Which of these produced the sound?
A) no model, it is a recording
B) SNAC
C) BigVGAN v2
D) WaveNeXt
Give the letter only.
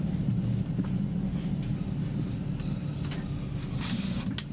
A